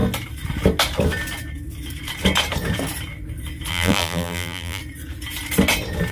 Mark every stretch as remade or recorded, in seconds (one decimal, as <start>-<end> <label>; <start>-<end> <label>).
0.0-3.7 recorded; 3.7-4.8 remade; 4.8-6.1 recorded